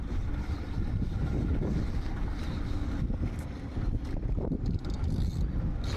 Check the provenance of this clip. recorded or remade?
recorded